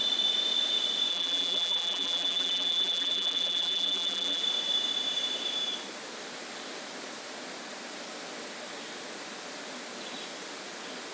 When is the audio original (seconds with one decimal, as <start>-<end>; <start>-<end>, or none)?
0.0-1.1; 4.4-11.1